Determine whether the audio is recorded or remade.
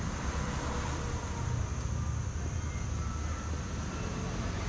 remade